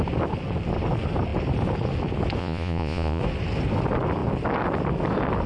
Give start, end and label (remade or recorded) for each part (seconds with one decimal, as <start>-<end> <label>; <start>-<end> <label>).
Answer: 0.0-2.4 recorded; 2.4-3.2 remade; 3.2-5.5 recorded